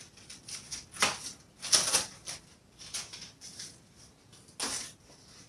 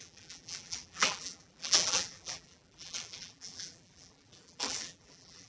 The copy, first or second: second